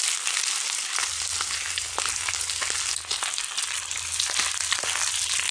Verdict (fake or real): real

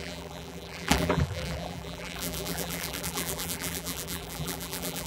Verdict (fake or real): fake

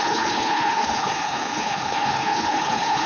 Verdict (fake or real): fake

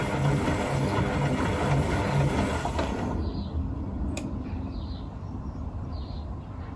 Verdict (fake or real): real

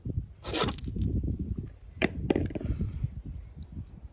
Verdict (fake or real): real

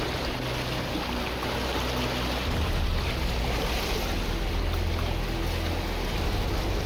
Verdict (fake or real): real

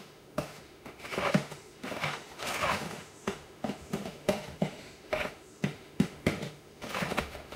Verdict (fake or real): fake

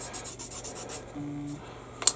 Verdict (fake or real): real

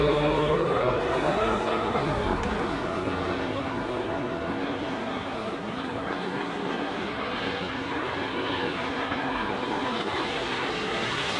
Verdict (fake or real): fake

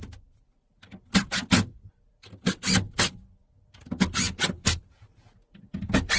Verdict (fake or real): real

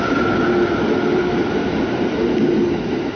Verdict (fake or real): real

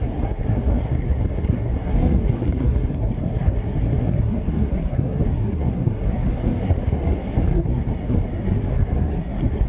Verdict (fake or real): fake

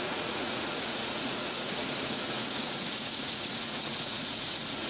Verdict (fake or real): fake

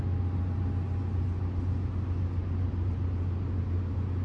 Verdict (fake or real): real